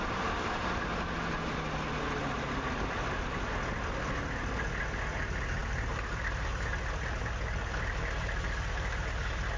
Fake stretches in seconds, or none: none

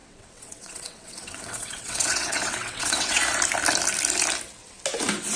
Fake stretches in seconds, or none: 0.0-3.2 (vocoder, WaveNeXt)

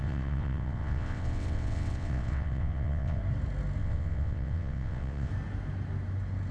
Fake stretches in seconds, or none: 0.0-3.2 (vocoder, WaveNeXt); 3.8-5.3